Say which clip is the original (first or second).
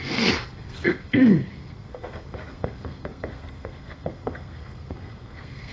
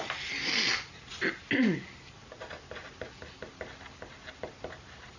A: second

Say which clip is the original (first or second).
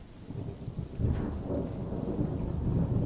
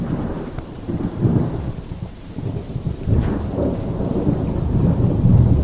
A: first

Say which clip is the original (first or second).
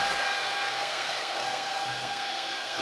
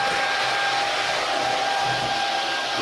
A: second